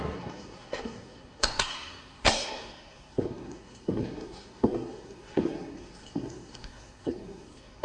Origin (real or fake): fake